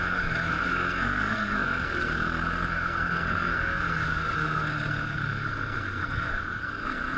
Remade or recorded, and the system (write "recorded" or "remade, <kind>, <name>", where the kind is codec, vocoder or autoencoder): remade, codec, SNAC